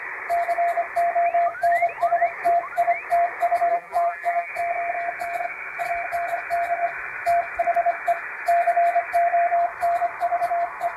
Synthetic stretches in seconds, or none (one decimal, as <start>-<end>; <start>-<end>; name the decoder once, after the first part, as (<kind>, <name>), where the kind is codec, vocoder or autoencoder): 3.7-4.5 (vocoder, BigVGAN v2)